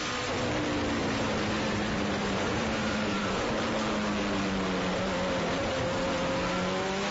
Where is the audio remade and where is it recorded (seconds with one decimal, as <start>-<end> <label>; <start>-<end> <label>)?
0.0-1.0 recorded; 1.0-3.4 remade; 3.4-7.1 recorded